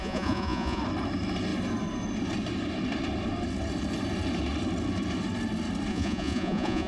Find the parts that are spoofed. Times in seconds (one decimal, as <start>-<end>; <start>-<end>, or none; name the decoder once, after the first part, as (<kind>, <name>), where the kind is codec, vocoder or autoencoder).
0.0-0.8 (vocoder, Vocos); 5.9-6.9